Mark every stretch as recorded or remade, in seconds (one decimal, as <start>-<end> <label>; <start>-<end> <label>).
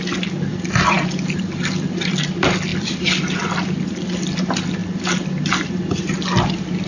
0.0-0.5 recorded; 0.5-2.1 remade; 2.1-2.7 recorded; 2.7-3.3 remade; 3.3-6.9 recorded